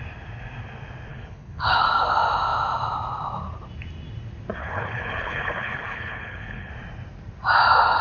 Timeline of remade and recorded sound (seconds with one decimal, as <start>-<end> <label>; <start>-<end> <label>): 0.0-1.1 recorded; 1.1-1.9 remade; 1.9-4.6 recorded; 4.6-6.7 remade; 6.7-8.0 recorded